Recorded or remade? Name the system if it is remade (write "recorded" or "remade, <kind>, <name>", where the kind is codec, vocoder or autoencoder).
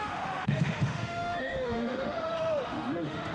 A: remade, autoencoder, DAC-VAE